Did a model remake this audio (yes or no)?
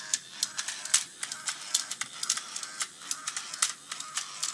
no